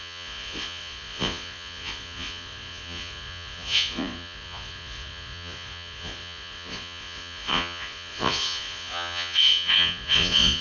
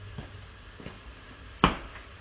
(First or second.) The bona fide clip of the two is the second